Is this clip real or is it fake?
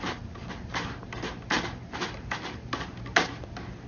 real